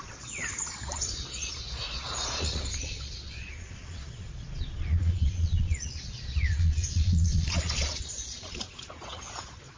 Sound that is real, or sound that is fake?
fake